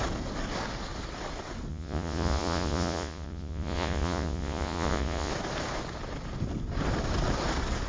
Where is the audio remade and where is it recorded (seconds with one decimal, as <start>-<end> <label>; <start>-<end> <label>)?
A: 0.0-1.7 recorded; 1.7-5.3 remade; 5.3-7.9 recorded